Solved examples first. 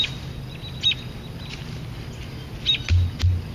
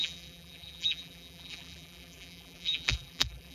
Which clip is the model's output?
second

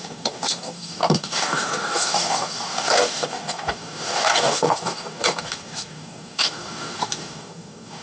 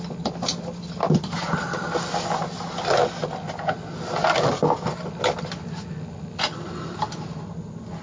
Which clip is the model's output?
first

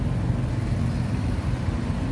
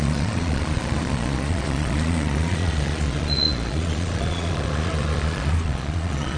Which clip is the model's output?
second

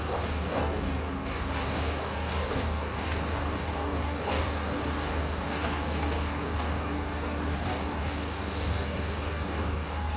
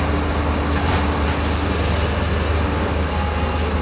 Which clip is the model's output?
first